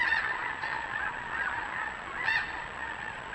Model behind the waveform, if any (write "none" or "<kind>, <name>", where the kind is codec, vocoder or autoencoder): vocoder, Vocos